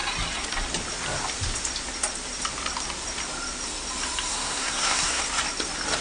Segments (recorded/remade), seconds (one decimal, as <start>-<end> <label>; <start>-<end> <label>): 0.0-4.3 recorded; 4.3-5.2 remade; 5.2-6.0 recorded

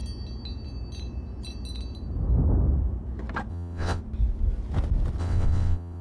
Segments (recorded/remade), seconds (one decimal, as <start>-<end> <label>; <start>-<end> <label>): 0.0-3.5 recorded; 3.5-4.0 remade; 4.0-5.2 recorded; 5.2-6.0 remade

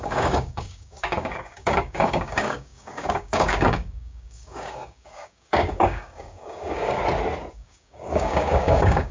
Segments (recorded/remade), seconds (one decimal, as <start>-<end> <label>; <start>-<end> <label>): 0.0-7.0 remade; 7.0-7.5 recorded; 7.5-9.1 remade

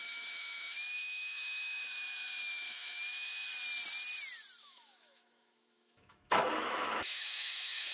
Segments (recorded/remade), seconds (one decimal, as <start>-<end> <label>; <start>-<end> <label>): 0.0-3.5 remade; 3.5-4.6 recorded; 4.6-7.9 remade

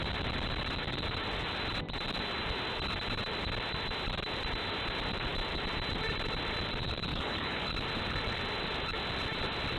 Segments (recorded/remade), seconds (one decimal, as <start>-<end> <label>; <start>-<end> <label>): 0.0-7.1 recorded; 7.1-7.7 remade; 7.7-9.8 recorded